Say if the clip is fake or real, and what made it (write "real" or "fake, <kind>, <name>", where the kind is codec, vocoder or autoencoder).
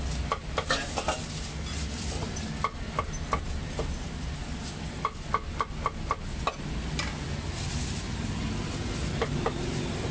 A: real